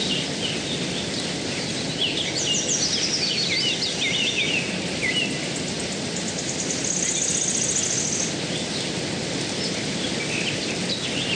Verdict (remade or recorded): recorded